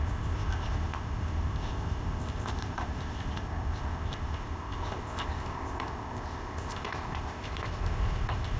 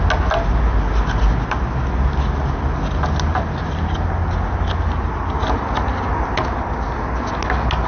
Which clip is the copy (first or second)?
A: first